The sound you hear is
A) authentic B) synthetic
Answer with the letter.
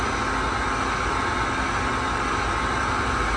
A